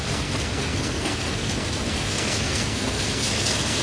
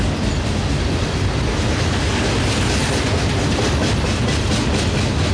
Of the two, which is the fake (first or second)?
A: first